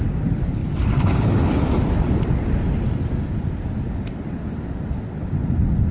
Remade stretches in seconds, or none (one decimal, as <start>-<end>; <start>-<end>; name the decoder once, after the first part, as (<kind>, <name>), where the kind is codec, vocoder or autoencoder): none